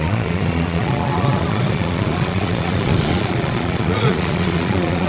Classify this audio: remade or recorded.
remade